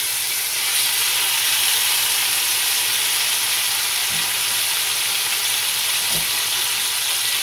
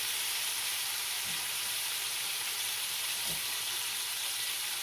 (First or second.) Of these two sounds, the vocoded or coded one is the second